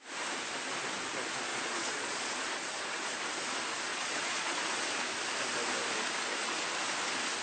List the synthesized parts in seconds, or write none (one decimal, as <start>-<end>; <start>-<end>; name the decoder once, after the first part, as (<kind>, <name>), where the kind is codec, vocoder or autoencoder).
1.5-2.2 (vocoder, Vocos); 3.9-4.6